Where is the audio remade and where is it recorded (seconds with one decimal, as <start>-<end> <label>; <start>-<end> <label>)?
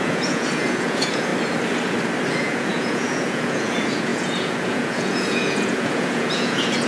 0.0-1.3 remade; 1.3-2.3 recorded; 2.3-6.9 remade